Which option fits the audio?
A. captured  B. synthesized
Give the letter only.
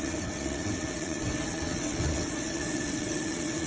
B